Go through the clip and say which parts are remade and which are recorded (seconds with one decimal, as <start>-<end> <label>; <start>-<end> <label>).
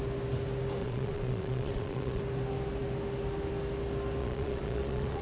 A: 0.0-0.8 recorded; 0.8-2.2 remade; 2.2-4.2 recorded; 4.2-5.2 remade